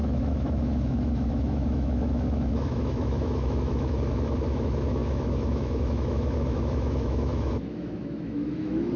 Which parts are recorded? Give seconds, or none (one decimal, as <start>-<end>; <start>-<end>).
none